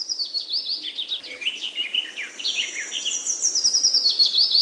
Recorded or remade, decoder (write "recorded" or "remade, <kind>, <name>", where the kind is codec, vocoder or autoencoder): recorded